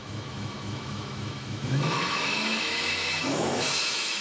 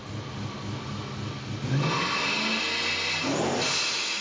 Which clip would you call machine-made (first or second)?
first